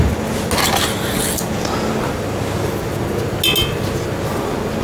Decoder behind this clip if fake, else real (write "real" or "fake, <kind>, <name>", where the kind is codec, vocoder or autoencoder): real